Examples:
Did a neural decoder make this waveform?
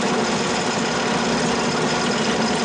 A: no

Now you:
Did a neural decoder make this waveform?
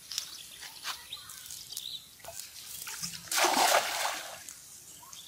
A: no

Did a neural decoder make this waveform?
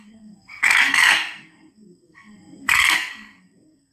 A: yes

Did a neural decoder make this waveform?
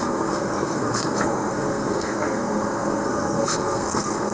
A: yes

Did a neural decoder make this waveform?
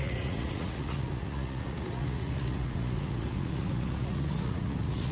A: yes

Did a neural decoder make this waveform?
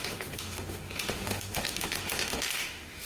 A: yes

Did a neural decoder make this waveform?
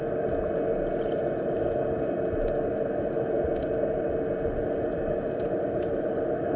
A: no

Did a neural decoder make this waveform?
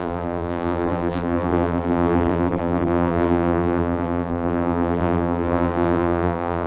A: yes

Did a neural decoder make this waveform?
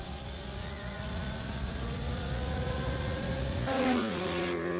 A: yes